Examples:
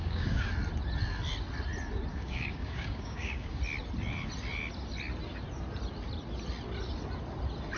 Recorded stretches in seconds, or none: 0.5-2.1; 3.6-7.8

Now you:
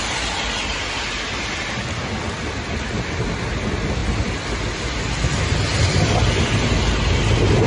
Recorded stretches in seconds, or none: 0.0-4.0; 6.7-7.7